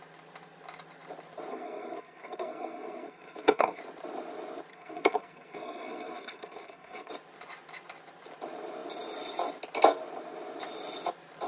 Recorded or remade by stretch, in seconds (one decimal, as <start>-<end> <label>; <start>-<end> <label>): 0.0-1.5 recorded; 1.5-3.8 remade; 3.8-4.7 recorded; 4.7-7.1 remade; 7.1-11.5 recorded